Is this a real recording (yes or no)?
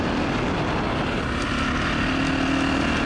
yes